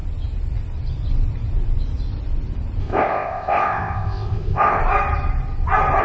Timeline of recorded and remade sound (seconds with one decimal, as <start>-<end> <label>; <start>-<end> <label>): 0.0-2.8 recorded; 2.8-4.8 remade; 4.8-6.0 recorded